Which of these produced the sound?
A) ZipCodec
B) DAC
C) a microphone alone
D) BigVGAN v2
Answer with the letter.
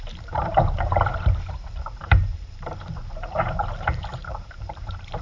D